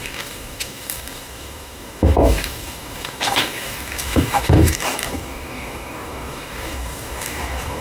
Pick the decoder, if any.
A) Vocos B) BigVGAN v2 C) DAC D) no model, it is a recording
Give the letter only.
C